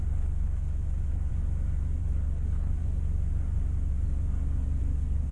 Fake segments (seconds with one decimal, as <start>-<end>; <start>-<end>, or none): 0.0-1.3; 2.0-2.8; 4.8-5.3